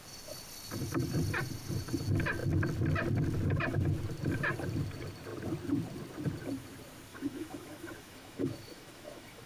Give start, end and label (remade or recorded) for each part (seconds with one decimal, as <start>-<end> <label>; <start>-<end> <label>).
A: 0.0-7.1 recorded; 7.1-9.5 remade